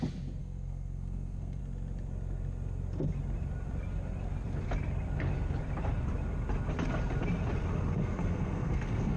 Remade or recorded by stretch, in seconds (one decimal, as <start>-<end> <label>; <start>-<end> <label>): 0.0-0.4 recorded; 0.4-1.6 remade; 1.6-8.0 recorded; 8.0-9.2 remade